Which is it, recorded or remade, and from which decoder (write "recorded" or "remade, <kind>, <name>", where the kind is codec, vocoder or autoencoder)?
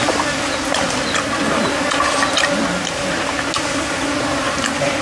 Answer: recorded